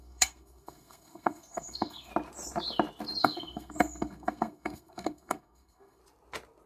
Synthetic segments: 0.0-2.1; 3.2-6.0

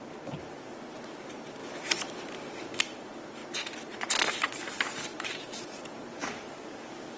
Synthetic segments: 0.0-3.4; 4.3-7.2

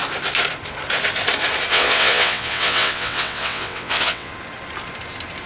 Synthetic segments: 1.7-4.3

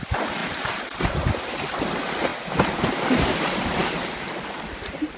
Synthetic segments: none

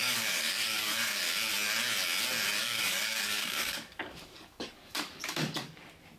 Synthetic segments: 0.0-1.2; 2.6-5.8

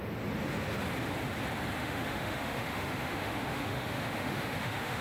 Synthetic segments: 1.8-5.0